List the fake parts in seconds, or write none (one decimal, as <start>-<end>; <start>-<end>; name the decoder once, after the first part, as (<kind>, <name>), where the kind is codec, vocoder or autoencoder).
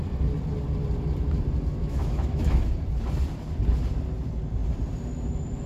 1.8-2.6 (autoencoder, DAC-VAE)